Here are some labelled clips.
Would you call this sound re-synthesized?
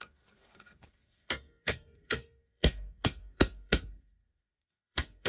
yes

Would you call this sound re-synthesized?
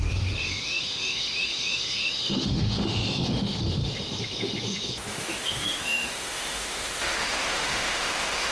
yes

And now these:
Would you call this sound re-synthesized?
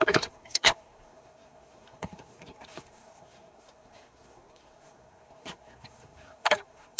yes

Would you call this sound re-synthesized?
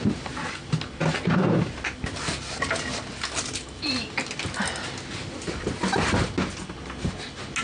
no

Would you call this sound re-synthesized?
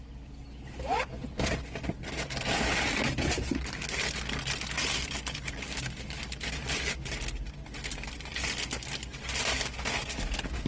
no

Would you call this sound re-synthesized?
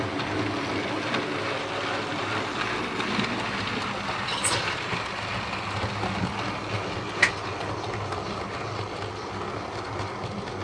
no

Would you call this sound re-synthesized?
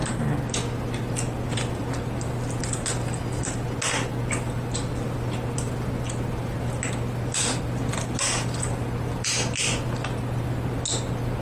no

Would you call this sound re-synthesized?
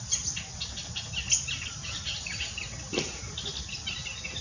no